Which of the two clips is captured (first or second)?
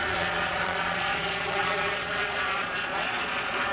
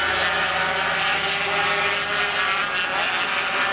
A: second